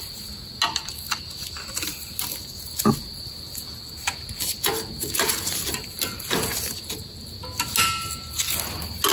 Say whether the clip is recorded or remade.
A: recorded